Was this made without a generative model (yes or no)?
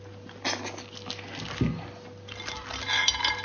yes